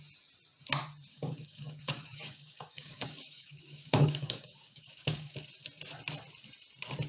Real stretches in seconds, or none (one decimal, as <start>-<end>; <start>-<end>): 0.0-1.1; 5.4-7.1